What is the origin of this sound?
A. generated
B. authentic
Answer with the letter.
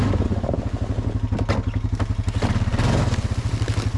B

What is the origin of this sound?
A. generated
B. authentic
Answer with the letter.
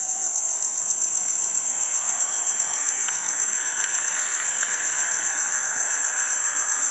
A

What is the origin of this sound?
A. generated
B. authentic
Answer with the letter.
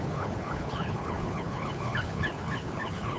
A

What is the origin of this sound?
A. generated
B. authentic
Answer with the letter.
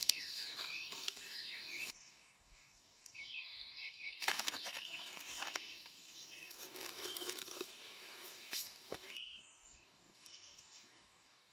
A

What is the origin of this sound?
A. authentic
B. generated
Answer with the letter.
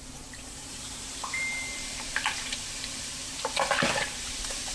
B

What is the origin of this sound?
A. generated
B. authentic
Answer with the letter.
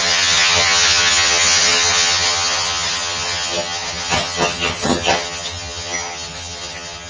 A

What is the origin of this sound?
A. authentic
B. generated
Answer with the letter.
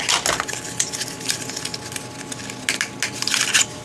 A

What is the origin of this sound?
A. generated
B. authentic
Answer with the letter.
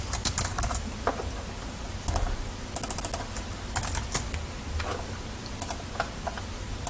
B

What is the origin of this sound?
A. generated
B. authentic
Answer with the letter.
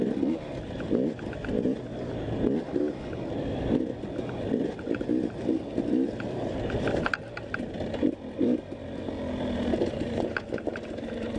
B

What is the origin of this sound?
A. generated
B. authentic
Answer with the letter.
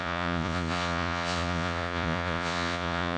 A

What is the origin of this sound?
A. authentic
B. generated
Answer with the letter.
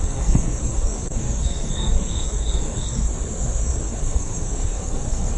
B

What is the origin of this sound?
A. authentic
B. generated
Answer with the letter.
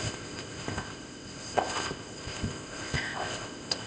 B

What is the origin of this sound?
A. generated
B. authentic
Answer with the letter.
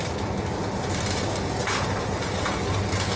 B